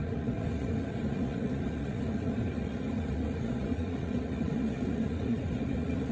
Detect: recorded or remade remade